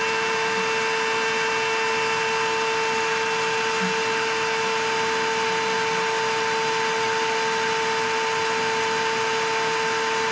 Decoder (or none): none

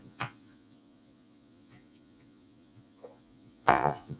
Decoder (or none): vocoder, Vocos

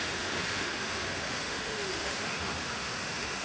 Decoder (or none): autoencoder, DAC-VAE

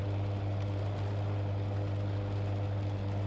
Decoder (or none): none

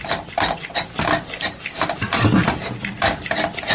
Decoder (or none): none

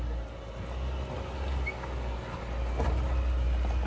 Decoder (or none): none